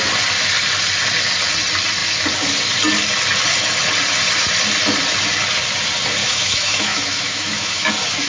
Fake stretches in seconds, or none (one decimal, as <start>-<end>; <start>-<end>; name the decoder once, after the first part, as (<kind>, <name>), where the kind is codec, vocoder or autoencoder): 6.2-7.9 (autoencoder, DAC-VAE)